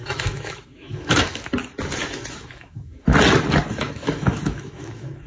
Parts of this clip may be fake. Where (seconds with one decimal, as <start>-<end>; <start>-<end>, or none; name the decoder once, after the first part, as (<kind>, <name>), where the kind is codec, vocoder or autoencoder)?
0.0-1.4 (autoencoder, DAC-VAE); 2.3-3.1; 3.7-5.3